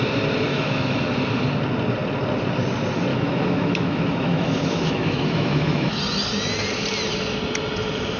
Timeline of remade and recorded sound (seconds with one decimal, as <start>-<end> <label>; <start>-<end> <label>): 0.0-0.5 recorded; 0.5-1.0 remade; 1.0-3.1 recorded; 3.1-6.0 remade; 6.0-8.2 recorded